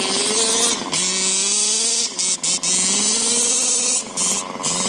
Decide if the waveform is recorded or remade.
recorded